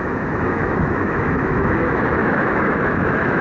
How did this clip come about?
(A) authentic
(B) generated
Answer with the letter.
B